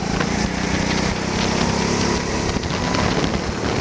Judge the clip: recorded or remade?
recorded